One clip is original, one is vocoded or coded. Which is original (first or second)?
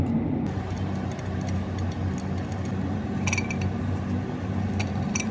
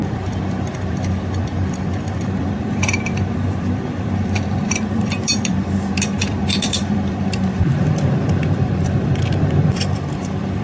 first